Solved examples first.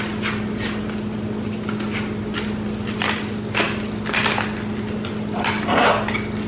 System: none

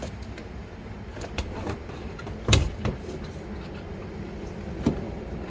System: vocoder, BigVGAN v2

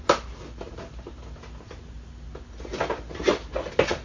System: none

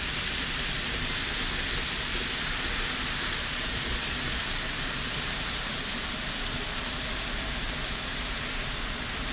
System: vocoder, BigVGAN v2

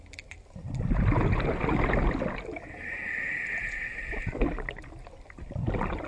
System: vocoder, BigVGAN v2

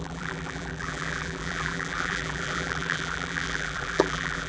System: vocoder, BigVGAN v2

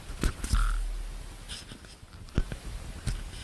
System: none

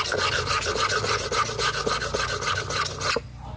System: none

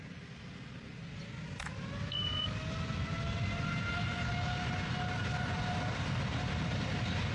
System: none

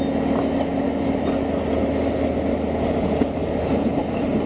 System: none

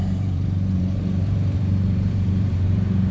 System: vocoder, BigVGAN v2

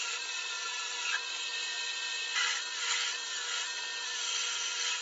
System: none